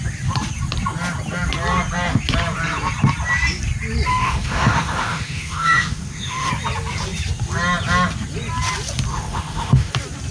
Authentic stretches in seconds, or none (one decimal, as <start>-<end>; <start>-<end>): 0.0-4.1; 6.5-9.1; 9.9-10.3